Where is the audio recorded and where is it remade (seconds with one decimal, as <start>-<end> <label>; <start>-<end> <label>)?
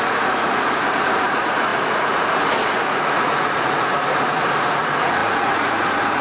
0.0-6.2 remade